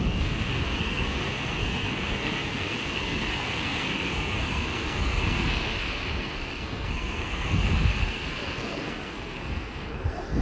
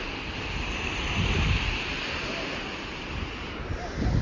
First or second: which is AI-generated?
first